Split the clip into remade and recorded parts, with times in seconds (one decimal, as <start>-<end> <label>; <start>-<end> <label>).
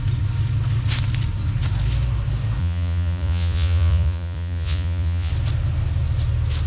0.0-2.6 recorded; 2.6-5.3 remade; 5.3-6.7 recorded